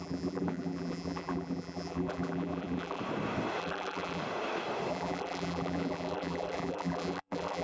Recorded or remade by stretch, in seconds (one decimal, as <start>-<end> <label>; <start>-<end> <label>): 0.0-3.0 remade; 3.0-3.6 recorded; 3.6-4.2 remade; 4.2-4.9 recorded; 4.9-7.6 remade